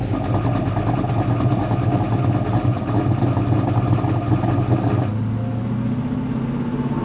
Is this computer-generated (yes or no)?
no